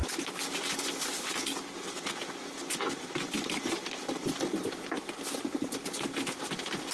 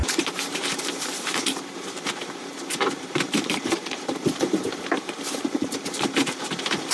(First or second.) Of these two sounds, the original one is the first